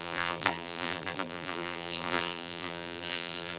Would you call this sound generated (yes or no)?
yes